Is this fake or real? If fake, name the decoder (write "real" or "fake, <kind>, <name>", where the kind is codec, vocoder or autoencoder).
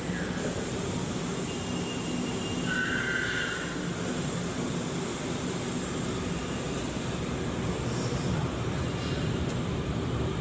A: real